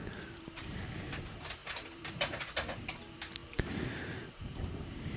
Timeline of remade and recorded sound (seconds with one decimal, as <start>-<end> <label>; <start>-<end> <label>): 0.0-5.2 remade